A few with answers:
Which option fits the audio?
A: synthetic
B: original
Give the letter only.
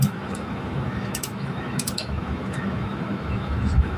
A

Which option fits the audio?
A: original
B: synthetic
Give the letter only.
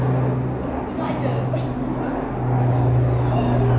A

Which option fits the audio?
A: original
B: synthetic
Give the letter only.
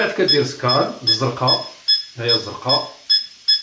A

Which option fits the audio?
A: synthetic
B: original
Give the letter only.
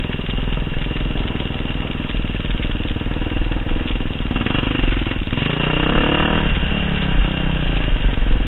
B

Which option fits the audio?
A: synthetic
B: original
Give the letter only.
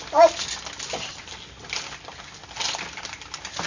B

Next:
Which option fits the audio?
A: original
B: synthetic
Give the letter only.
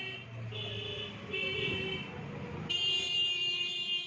A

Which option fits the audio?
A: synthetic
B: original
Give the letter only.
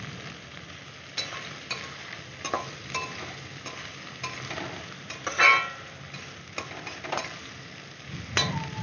B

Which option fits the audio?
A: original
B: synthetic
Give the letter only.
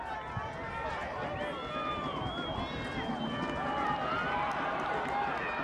A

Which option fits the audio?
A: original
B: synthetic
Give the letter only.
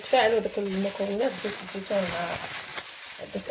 A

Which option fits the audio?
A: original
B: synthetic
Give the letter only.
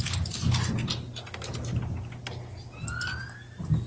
A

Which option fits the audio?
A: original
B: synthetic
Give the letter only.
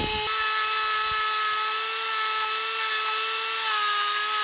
A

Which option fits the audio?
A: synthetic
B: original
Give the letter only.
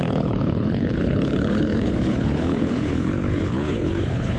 A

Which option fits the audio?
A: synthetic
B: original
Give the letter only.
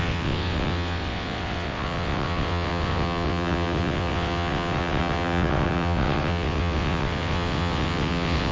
A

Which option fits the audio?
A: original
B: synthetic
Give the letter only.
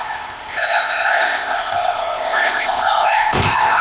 B